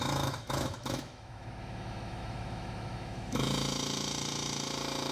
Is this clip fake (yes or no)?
yes